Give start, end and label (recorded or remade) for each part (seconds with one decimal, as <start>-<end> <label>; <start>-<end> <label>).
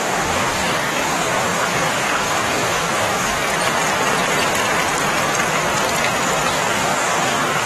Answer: 0.0-3.5 remade; 3.5-6.5 recorded; 6.5-7.7 remade